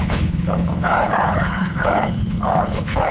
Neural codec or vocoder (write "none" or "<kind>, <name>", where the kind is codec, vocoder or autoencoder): codec, HILCodec